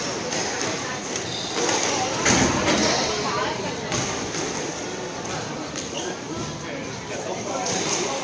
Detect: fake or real real